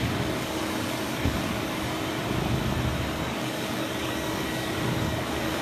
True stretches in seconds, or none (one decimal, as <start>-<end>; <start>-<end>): 1.9-3.2